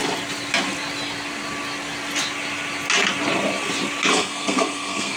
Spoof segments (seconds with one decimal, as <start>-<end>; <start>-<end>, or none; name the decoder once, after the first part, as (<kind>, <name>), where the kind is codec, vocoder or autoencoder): 4.1-5.2 (codec, SNAC)

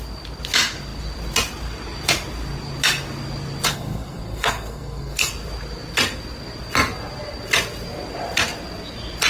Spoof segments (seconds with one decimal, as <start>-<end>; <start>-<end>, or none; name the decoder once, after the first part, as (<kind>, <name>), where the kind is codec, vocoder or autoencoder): 3.7-5.3 (codec, SNAC)